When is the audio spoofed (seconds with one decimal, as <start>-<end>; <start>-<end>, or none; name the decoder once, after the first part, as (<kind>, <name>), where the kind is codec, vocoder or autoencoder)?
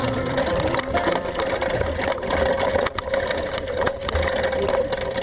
0.0-3.1 (vocoder, BigVGAN v2)